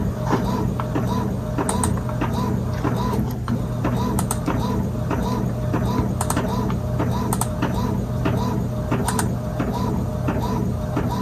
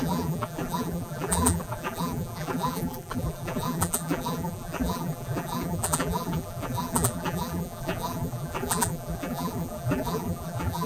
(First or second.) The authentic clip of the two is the first